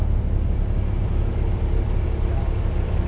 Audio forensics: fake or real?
real